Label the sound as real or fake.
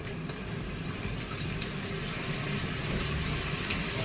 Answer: fake